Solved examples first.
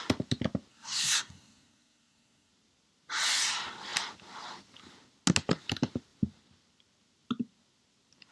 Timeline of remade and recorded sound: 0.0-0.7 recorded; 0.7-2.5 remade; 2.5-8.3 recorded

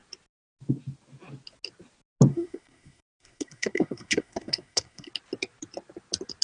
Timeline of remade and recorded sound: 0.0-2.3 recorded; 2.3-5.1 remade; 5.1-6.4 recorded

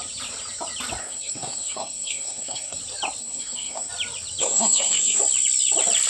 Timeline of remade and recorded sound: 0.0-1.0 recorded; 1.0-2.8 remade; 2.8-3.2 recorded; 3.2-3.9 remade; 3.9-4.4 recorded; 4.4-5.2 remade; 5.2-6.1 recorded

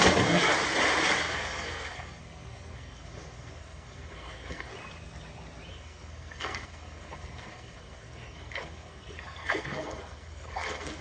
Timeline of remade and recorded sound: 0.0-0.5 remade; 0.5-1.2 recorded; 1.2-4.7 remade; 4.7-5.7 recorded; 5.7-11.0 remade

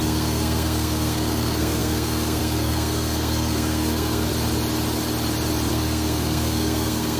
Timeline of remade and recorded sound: 0.0-4.3 remade; 4.3-5.7 recorded; 5.7-7.2 remade

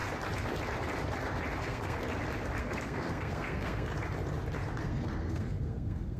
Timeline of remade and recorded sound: 0.0-1.6 recorded; 1.6-2.0 remade; 2.0-2.6 recorded; 2.6-3.9 remade; 3.9-4.8 recorded; 4.8-6.2 remade

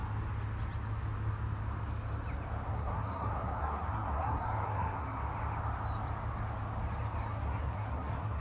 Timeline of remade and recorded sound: 0.0-2.7 recorded; 2.7-5.2 remade; 5.2-7.3 recorded; 7.3-8.4 remade